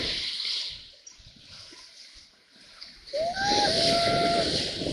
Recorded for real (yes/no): yes